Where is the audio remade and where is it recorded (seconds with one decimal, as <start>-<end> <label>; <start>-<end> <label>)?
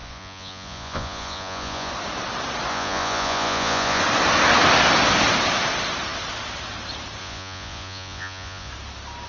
0.0-1.9 remade; 1.9-2.7 recorded; 2.7-4.0 remade; 4.0-7.2 recorded; 7.2-8.7 remade; 8.7-9.3 recorded